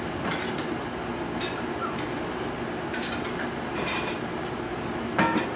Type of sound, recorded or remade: recorded